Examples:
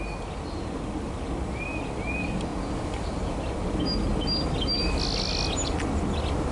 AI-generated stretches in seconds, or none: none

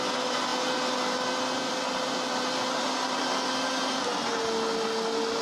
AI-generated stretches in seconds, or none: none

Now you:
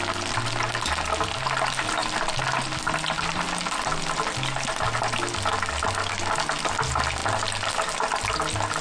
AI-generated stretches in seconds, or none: none

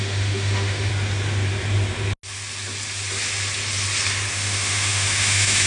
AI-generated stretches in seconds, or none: 0.0-0.9 (autoencoder, DAC-VAE); 4.3-5.7

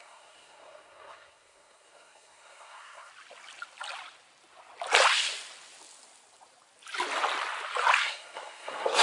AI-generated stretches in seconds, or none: 0.0-3.1 (codec, SNAC); 8.0-9.0